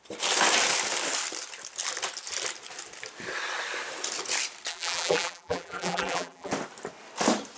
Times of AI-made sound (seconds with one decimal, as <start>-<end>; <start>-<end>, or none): 4.7-6.5